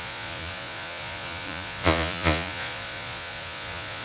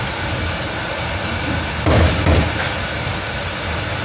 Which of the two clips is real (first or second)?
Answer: second